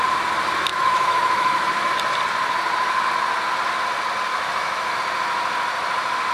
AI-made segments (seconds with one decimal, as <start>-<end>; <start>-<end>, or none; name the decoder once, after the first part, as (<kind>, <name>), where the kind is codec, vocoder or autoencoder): 0.7-1.9 (autoencoder, DAC-VAE); 4.3-5.0